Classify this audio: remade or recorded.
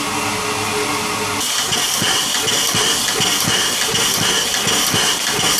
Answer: recorded